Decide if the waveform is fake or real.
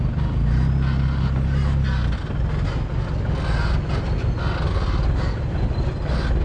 real